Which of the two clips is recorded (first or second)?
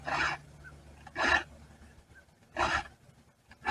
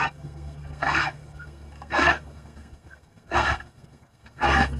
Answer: first